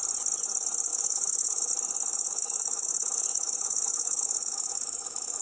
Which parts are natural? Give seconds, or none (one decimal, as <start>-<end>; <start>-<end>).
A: 0.0-0.9; 1.7-2.1